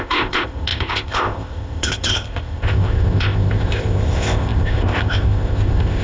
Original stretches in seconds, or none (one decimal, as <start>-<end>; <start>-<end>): none